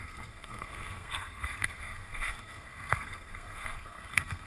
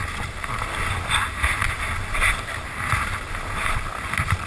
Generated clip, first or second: first